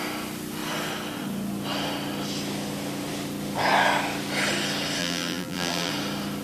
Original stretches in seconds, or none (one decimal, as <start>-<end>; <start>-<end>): 0.0-5.0; 5.9-6.4